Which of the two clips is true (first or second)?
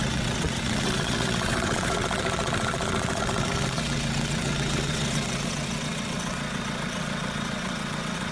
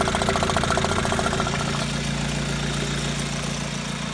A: second